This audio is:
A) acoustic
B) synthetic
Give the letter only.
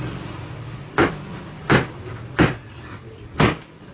A